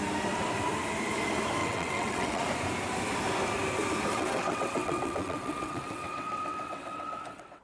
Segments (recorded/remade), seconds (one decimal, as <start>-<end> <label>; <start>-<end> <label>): 0.0-1.6 recorded; 1.6-2.4 remade; 2.4-4.1 recorded; 4.1-7.6 remade